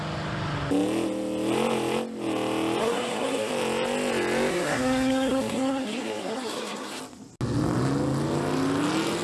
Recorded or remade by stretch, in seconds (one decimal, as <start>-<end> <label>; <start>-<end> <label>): 0.0-2.8 recorded; 2.8-3.5 remade; 3.5-4.5 recorded; 4.5-7.0 remade; 7.0-9.2 recorded

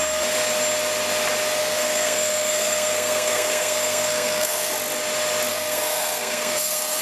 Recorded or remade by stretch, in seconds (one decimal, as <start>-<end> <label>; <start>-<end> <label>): 0.0-1.6 recorded; 1.6-4.7 remade; 4.7-5.5 recorded; 5.5-7.0 remade

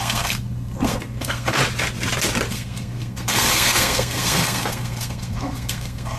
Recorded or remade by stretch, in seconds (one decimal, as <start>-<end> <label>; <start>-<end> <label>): 0.0-1.6 remade; 1.6-2.5 recorded; 2.5-6.2 remade

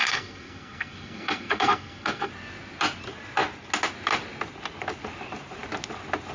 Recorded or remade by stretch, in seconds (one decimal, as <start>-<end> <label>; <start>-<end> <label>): 0.0-2.3 remade; 2.3-6.3 recorded

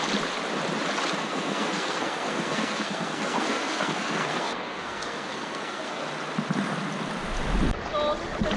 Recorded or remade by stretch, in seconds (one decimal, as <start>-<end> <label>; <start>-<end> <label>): 0.0-1.2 recorded; 1.2-6.1 remade; 6.1-8.6 recorded

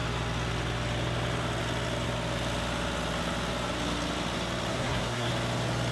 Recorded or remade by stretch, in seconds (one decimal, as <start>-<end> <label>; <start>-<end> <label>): 0.0-4.7 recorded; 4.7-5.3 remade; 5.3-5.9 recorded